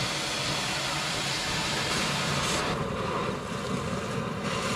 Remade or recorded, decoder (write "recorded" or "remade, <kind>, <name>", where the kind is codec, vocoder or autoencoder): remade, vocoder, BigVGAN v2